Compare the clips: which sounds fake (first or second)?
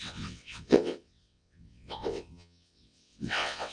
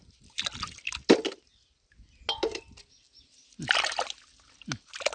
first